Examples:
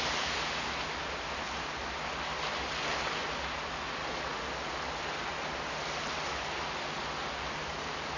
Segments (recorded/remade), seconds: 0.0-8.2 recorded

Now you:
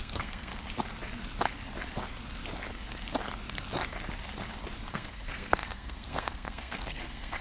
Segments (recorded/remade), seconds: 0.0-0.5 remade; 0.5-4.9 recorded; 4.9-7.4 remade

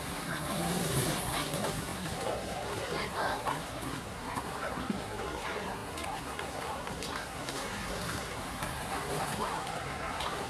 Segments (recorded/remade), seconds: 0.0-10.5 remade

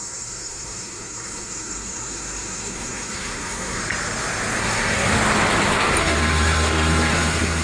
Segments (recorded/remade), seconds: 0.0-3.8 remade; 3.8-4.6 recorded; 4.6-5.1 remade; 5.1-6.0 recorded; 6.0-7.6 remade

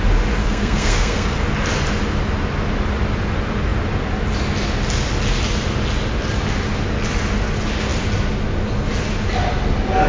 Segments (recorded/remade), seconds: 0.0-0.4 recorded; 0.4-1.4 remade; 1.4-10.1 recorded

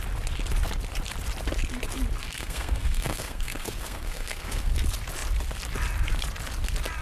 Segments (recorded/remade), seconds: 0.0-2.2 recorded; 2.2-4.7 remade; 4.7-7.0 recorded

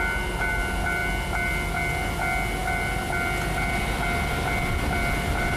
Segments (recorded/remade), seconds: 0.0-5.6 recorded

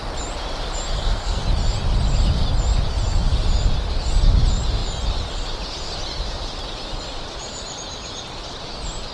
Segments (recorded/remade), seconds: 0.0-0.9 recorded; 0.9-1.4 remade; 1.4-9.1 recorded